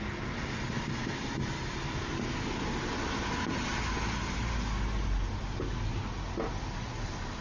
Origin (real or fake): real